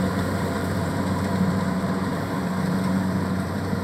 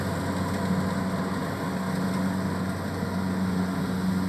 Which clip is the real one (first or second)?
second